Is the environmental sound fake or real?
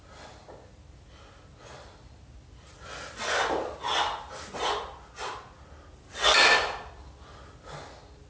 real